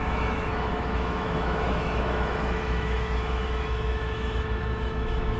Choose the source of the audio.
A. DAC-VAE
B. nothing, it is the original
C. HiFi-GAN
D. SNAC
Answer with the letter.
A